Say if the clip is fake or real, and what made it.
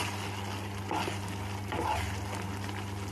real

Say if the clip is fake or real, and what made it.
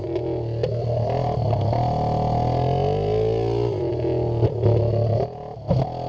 real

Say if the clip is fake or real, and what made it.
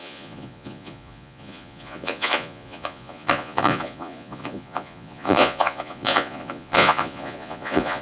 fake, vocoder, Vocos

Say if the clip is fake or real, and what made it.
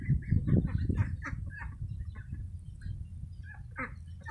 real